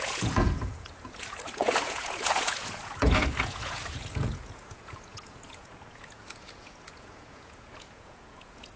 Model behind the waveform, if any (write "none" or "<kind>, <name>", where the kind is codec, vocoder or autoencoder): vocoder, Vocos